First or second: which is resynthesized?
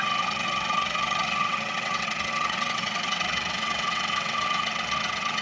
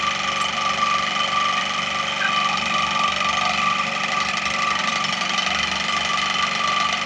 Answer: first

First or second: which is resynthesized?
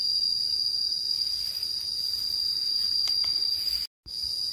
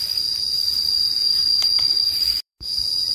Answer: second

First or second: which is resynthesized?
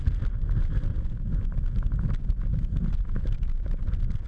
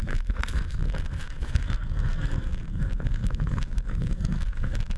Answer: second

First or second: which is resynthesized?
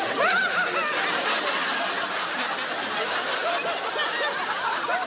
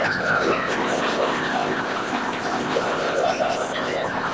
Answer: second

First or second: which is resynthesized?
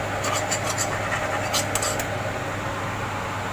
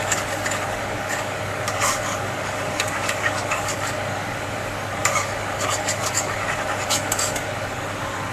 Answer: second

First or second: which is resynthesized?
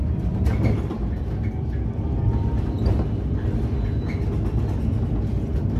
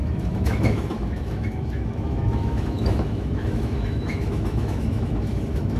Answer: second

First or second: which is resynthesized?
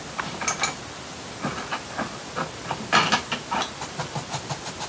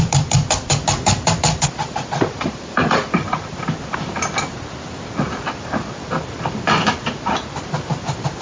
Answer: second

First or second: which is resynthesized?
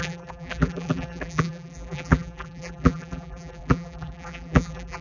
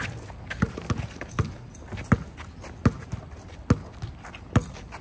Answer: first